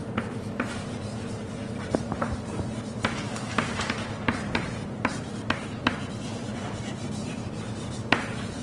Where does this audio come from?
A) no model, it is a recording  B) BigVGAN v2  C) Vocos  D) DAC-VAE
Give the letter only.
B